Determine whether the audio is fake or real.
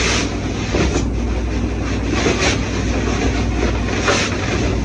real